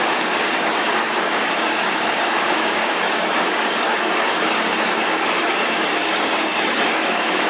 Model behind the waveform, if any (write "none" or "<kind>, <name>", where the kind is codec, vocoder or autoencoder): codec, DAC